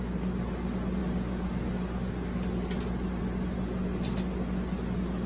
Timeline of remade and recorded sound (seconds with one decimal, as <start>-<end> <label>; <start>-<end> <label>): 0.0-5.3 recorded

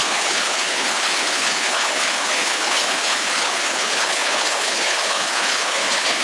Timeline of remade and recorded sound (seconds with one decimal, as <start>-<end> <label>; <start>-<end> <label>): 0.0-6.2 remade

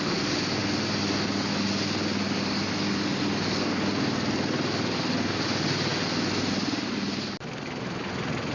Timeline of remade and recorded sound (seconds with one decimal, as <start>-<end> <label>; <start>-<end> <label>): 0.0-8.5 recorded

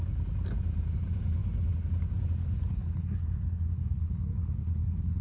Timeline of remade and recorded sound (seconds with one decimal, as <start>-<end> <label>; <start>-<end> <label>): 0.0-2.4 recorded; 2.4-5.2 remade

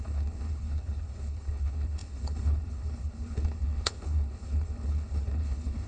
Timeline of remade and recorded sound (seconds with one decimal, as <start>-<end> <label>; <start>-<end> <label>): 0.0-5.9 remade

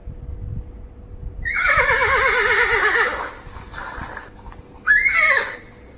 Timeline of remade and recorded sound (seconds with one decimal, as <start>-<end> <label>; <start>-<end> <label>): 0.0-6.0 recorded

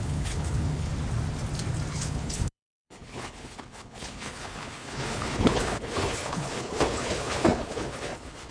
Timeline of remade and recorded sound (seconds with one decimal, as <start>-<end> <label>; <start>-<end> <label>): 0.0-0.9 remade; 0.9-1.9 recorded; 1.9-8.5 remade